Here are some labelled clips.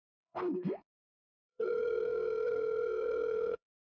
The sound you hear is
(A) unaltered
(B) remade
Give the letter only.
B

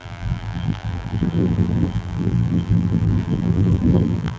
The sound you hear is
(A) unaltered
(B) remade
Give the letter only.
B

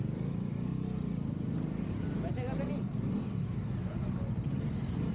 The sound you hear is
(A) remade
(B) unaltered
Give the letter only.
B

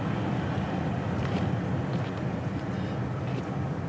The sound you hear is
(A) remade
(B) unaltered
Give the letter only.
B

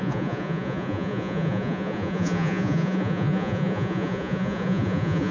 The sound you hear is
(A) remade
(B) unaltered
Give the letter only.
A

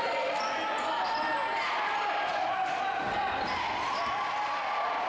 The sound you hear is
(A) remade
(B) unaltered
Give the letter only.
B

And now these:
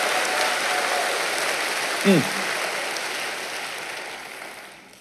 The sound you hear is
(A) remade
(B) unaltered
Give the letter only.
B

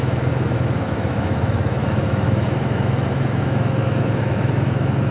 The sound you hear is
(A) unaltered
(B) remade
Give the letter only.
B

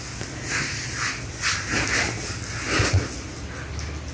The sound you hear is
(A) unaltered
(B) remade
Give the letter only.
A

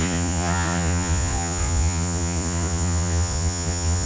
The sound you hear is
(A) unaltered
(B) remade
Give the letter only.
B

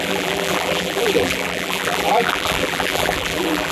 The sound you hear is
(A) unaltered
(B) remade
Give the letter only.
B